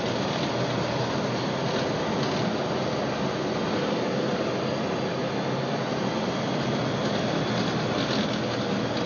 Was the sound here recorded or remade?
recorded